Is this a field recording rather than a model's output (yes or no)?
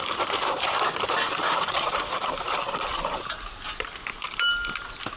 yes